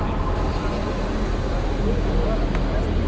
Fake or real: real